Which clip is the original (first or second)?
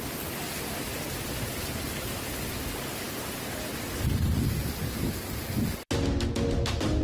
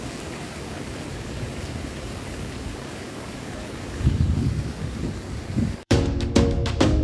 first